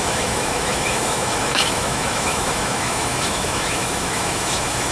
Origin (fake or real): fake